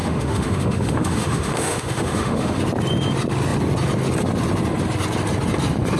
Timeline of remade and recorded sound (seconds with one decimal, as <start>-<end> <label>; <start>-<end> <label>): 0.0-2.6 remade; 2.6-6.0 recorded